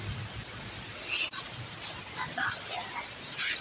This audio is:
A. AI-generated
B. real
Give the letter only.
B